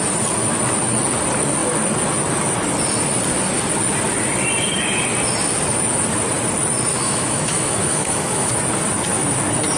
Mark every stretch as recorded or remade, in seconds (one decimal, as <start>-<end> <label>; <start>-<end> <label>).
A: 0.0-6.9 recorded; 6.9-8.5 remade; 8.5-9.8 recorded